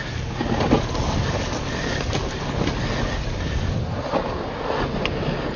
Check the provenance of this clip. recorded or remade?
recorded